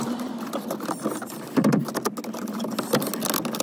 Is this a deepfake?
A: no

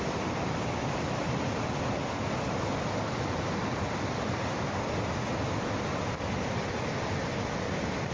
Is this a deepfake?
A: no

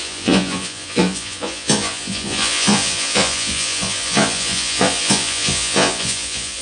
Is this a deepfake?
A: yes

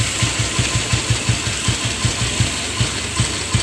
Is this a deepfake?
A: no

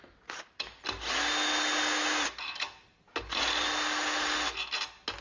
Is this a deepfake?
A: no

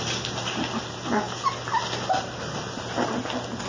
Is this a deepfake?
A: no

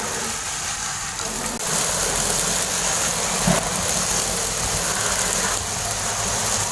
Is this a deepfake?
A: no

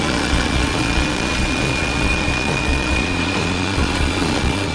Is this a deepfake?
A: yes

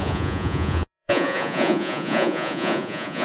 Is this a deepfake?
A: yes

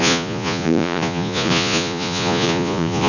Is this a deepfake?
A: yes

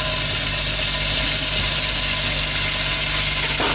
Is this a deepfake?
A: no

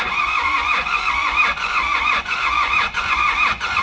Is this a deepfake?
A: yes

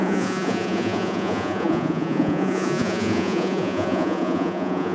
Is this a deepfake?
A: yes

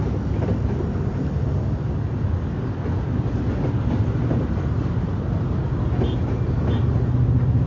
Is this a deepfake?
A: no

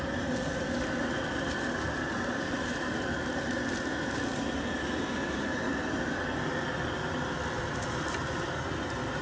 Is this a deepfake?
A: no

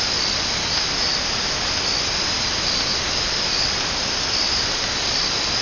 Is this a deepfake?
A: no